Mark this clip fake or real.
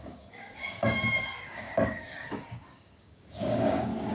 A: fake